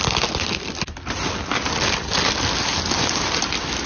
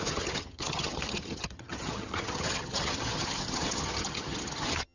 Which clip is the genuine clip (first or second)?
first